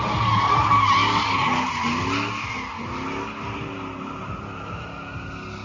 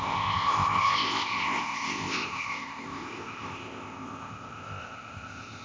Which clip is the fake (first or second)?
second